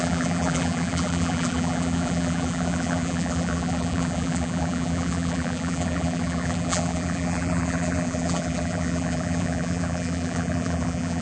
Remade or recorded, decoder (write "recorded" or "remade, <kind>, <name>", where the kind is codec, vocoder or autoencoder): remade, vocoder, BigVGAN v2